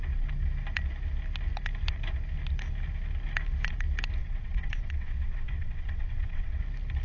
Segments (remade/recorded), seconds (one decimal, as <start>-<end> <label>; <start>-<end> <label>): 0.0-4.2 recorded; 4.2-6.6 remade; 6.6-7.0 recorded